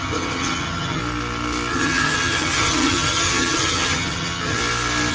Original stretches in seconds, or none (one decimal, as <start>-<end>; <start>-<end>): 1.0-1.7; 4.6-5.1